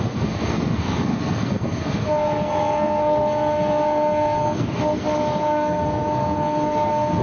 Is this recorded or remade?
remade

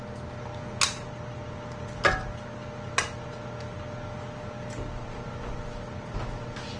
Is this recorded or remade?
recorded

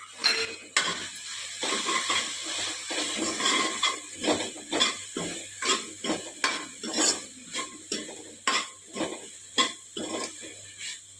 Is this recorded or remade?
recorded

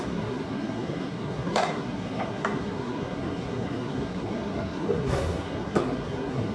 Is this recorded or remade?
remade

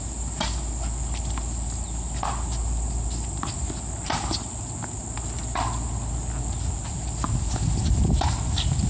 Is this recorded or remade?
recorded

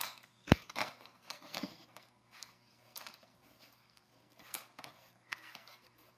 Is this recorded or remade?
remade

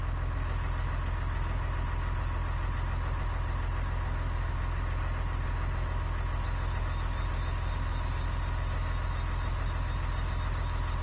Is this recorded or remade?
recorded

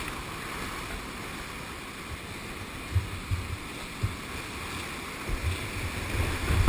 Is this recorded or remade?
recorded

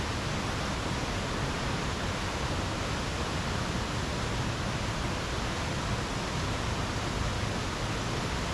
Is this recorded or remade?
recorded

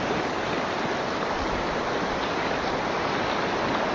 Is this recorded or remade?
recorded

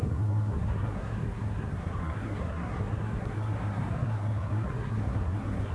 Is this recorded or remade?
remade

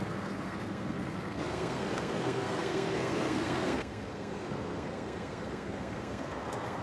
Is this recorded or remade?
remade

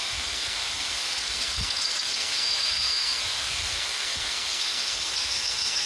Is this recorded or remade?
remade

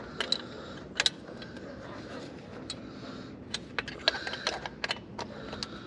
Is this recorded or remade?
recorded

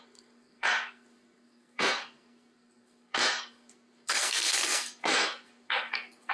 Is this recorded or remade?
remade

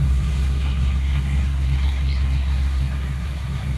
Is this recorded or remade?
remade